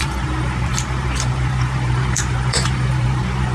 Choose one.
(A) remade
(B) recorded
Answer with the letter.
A